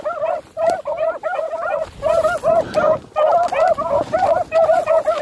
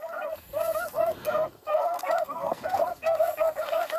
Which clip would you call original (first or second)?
first